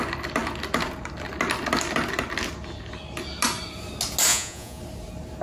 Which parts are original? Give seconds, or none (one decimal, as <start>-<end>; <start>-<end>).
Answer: 0.0-4.3; 4.8-5.4